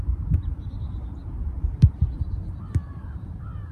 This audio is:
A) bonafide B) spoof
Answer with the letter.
A